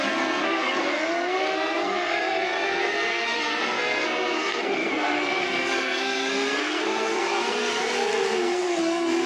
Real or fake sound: fake